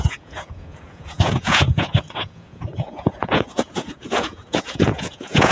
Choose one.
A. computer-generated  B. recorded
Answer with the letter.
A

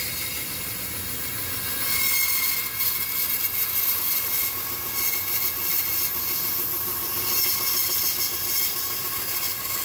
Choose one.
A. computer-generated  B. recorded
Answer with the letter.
B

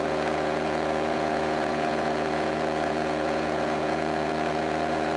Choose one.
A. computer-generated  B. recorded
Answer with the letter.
A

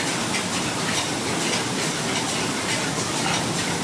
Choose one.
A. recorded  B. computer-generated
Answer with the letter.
A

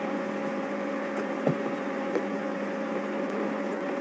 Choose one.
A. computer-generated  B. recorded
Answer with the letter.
A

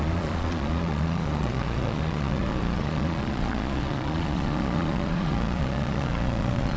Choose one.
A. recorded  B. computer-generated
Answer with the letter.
B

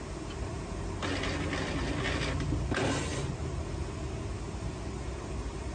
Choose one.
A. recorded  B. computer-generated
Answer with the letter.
A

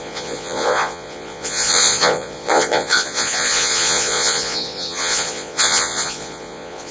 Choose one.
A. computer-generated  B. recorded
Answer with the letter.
A